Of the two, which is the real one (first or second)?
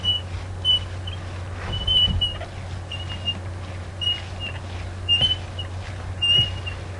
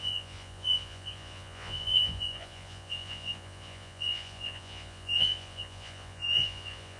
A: first